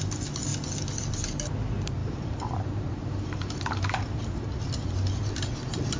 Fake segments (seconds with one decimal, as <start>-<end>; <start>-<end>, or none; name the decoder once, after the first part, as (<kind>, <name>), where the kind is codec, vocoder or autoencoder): 2.0-4.6 (vocoder, BigVGAN v2)